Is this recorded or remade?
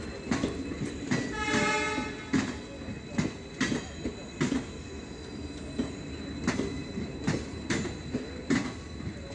recorded